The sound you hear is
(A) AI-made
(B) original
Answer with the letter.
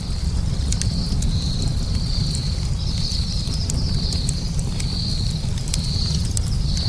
B